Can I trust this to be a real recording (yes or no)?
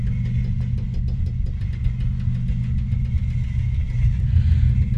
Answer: yes